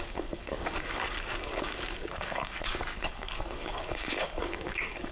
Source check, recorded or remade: remade